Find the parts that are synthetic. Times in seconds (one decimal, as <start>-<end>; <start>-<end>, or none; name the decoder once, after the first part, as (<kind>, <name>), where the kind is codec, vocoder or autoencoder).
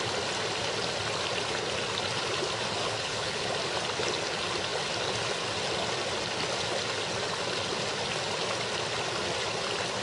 2.8-3.5 (codec, HILCodec)